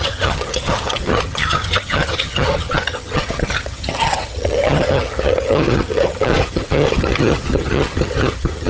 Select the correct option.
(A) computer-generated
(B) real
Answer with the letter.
A